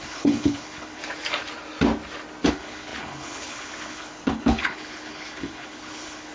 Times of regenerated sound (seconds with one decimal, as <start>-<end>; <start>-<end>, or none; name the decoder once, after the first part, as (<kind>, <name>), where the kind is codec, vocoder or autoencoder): 0.0-1.0 (codec, HILCodec); 2.5-6.3